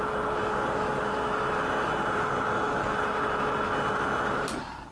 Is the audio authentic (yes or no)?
yes